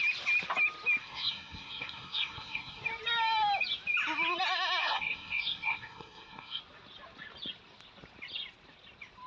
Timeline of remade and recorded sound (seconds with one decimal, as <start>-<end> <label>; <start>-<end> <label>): 0.0-1.0 recorded; 1.0-2.8 remade; 2.8-4.8 recorded; 4.8-6.6 remade; 6.6-9.3 recorded